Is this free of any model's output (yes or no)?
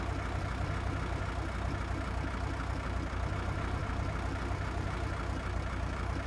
yes